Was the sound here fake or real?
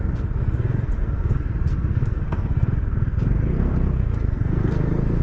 fake